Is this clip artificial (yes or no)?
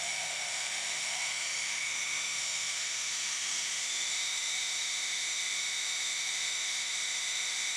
yes